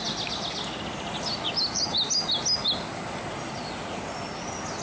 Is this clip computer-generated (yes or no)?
no